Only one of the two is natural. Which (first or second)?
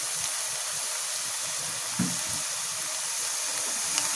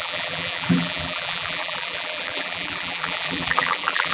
first